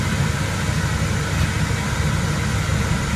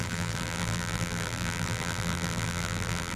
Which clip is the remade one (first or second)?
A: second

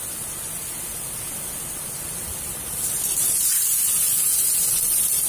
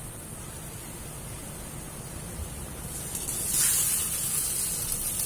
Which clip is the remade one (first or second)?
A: first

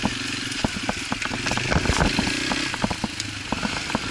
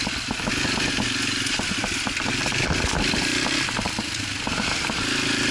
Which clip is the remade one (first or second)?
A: second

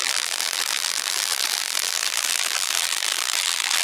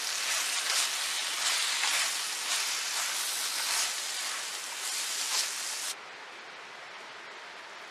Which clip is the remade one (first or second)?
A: first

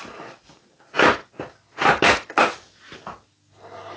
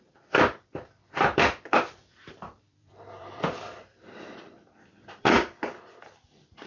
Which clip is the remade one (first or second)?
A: second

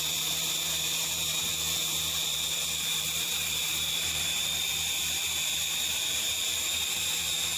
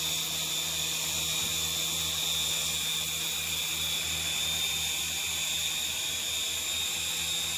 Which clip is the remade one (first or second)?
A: first